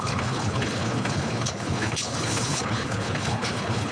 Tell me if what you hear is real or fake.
fake